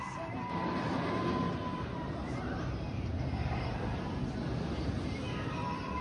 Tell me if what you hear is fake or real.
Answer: real